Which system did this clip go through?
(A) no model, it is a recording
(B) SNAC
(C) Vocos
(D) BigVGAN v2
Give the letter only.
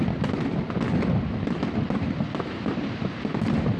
A